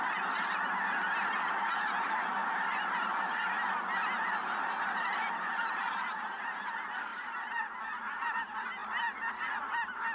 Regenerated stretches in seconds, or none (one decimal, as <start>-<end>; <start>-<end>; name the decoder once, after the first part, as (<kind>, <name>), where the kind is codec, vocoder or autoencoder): 1.2-1.7 (vocoder, BigVGAN v2); 7.1-7.8